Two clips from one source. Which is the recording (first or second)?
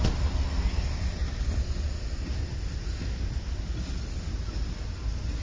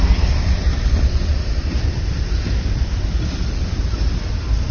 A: first